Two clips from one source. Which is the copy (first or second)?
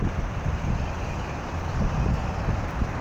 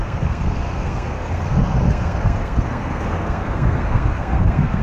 second